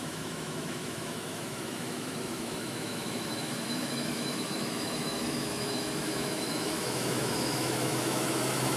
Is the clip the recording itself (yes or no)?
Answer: no